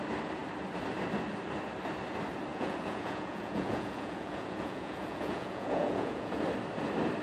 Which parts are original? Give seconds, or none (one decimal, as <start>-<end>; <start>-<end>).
0.0-2.5; 6.4-7.2